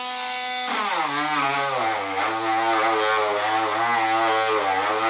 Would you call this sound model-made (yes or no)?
no